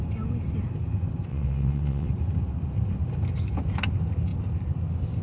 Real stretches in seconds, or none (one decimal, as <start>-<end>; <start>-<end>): 0.0-1.3; 2.1-5.2